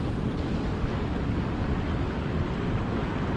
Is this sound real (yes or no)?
yes